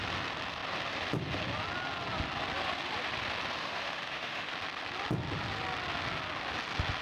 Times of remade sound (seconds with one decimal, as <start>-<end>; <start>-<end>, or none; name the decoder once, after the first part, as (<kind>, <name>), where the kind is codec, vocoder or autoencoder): 3.6-4.5 (autoencoder, DAC-VAE)